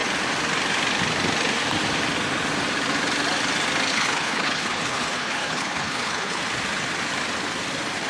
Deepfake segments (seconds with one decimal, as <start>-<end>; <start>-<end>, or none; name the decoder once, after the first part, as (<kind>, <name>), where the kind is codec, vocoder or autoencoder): 3.9-6.4 (codec, HILCodec)